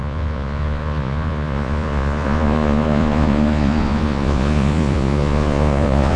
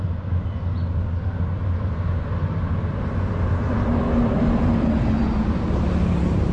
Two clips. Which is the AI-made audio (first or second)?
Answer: first